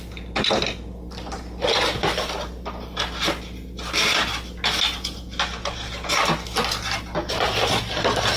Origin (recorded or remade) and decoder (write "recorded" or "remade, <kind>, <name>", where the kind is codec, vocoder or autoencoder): recorded